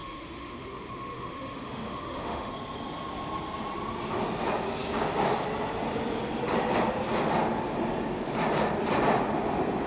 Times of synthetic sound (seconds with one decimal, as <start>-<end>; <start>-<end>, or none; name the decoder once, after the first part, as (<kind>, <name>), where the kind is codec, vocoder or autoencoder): 0.0-2.5 (autoencoder, DAC-VAE)